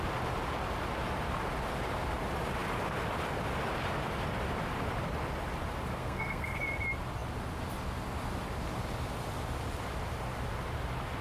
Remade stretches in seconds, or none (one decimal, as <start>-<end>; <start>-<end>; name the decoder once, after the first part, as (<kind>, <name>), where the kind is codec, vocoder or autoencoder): 6.0-6.6 (codec, SNAC)